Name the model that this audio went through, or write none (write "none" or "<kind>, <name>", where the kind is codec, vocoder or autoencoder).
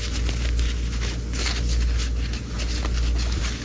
none